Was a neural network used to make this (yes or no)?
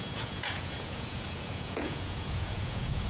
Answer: yes